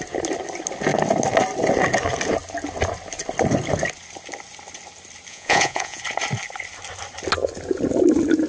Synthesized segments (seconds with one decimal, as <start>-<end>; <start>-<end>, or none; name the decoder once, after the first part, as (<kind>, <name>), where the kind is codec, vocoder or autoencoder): 5.3-6.0 (vocoder, Vocos)